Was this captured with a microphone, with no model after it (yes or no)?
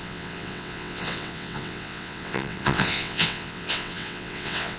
no